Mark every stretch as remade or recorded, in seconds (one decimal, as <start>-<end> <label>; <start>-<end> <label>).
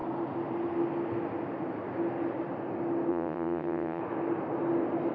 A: 0.0-3.1 recorded; 3.1-4.0 remade; 4.0-5.1 recorded